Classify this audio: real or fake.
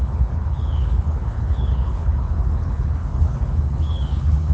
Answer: fake